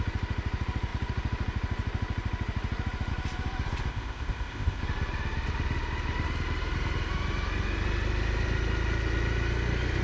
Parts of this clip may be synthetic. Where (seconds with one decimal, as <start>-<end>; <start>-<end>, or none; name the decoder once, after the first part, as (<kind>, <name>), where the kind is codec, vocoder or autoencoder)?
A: 3.9-4.8 (codec, ZipCodec)